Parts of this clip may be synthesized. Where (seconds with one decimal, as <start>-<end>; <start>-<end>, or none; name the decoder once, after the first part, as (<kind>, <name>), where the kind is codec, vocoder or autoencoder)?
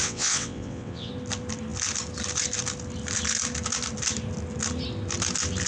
0.0-1.1 (vocoder, WaveNeXt)